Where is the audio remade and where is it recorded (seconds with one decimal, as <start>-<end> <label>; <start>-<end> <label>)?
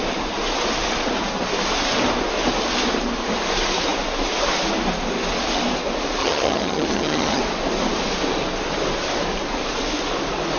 0.0-6.2 recorded; 6.2-7.4 remade; 7.4-10.6 recorded